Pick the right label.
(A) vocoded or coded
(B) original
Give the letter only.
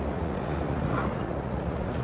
A